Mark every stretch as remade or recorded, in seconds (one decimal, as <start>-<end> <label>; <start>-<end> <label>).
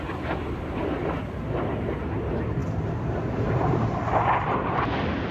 0.0-5.3 recorded